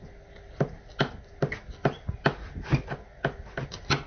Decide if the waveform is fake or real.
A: real